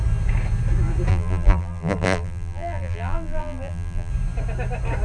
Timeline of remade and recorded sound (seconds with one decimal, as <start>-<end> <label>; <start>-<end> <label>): 0.0-1.1 recorded; 1.1-4.1 remade; 4.1-5.0 recorded